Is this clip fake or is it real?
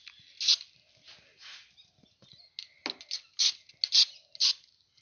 real